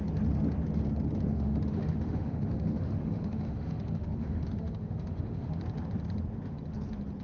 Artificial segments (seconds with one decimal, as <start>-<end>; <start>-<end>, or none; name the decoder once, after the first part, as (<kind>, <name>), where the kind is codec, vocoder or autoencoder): 1.3-5.6 (autoencoder, DAC-VAE)